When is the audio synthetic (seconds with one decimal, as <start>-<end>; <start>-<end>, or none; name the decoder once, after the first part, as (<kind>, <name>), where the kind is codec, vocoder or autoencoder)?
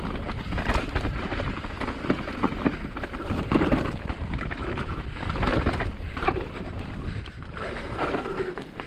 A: 7.8-8.9 (codec, SNAC)